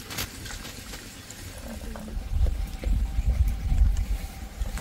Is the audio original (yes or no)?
yes